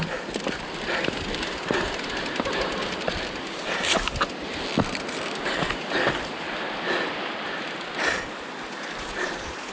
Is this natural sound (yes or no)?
yes